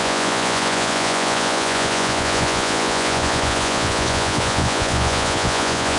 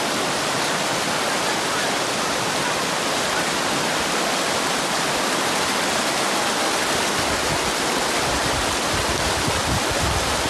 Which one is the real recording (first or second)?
second